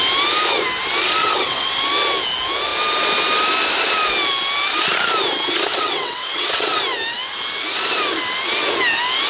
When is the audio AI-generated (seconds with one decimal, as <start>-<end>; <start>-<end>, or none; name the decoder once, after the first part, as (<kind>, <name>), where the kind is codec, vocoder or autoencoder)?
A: 1.2-1.8 (vocoder, WaveNeXt); 5.7-6.8

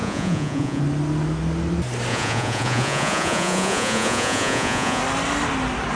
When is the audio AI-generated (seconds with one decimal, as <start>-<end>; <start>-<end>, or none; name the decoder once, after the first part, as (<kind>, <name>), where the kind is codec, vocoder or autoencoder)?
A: 0.0-0.8 (vocoder, Vocos); 2.1-5.0

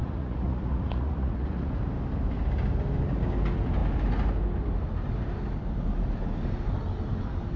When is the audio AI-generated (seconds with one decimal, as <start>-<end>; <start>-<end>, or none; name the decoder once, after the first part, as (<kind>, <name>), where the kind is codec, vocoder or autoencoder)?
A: 0.0-1.7 (vocoder, Vocos)

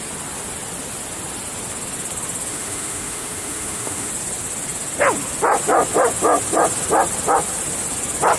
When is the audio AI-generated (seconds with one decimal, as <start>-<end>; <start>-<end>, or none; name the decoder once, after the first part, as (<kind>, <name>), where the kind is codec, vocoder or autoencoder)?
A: 2.5-4.1 (autoencoder, DAC-VAE)

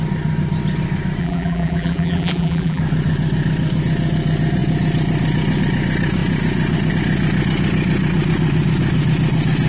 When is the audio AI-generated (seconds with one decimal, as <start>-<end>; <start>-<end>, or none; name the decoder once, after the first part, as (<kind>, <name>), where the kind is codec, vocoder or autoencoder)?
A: 1.2-2.8 (vocoder, BigVGAN v2)